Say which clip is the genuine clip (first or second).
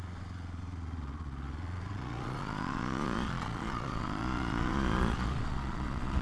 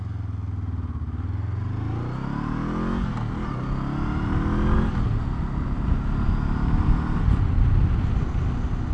second